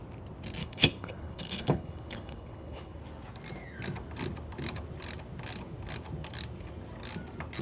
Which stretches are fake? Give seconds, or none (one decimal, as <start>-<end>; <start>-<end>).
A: 0.6-2.9